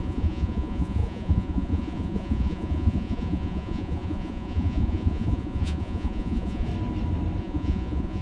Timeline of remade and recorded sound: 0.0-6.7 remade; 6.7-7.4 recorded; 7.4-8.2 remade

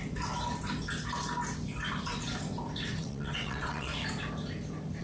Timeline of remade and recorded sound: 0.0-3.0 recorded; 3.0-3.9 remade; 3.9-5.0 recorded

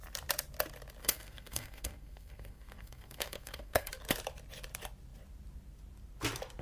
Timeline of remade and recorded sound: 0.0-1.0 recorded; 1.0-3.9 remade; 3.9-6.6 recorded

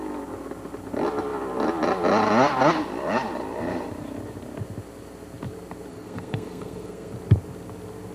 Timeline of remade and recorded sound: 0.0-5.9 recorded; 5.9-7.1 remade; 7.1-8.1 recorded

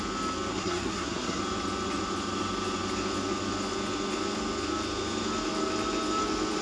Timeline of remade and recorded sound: 0.0-0.5 recorded; 0.5-1.4 remade; 1.4-6.6 recorded

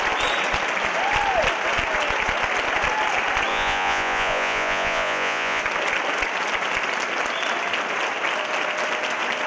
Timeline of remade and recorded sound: 0.0-3.5 recorded; 3.5-5.6 remade; 5.6-9.5 recorded

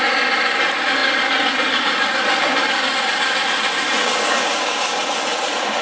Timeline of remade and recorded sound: 0.0-4.0 recorded; 4.0-5.0 remade; 5.0-5.8 recorded